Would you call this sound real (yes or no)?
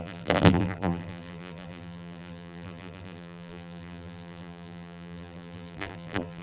no